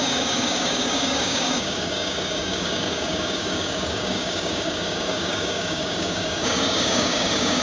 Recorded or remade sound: remade